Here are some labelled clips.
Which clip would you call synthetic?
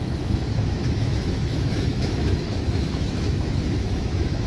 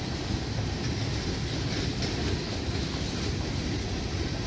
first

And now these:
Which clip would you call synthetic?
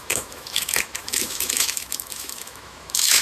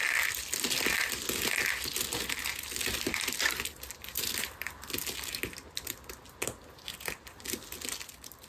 first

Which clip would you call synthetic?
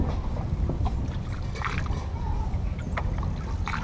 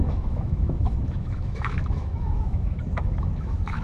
second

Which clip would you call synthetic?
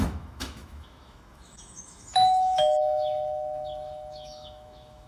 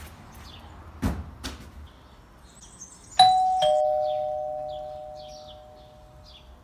first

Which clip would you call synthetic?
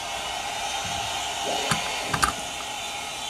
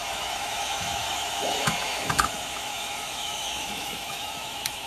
second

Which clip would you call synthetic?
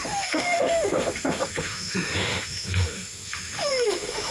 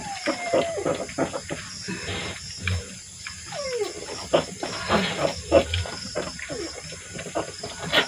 first